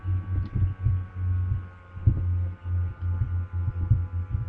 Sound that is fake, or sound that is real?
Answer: real